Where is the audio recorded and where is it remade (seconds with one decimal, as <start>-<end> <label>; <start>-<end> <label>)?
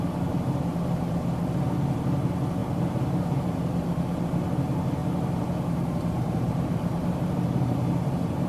0.0-2.6 recorded; 2.6-3.6 remade; 3.6-5.0 recorded; 5.0-8.5 remade